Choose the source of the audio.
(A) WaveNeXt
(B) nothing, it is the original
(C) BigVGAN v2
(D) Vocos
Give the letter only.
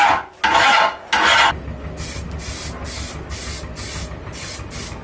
B